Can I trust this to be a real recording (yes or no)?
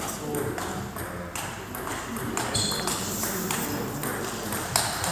yes